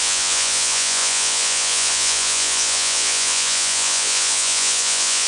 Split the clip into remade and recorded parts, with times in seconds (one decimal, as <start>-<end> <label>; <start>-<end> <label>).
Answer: 0.0-5.3 remade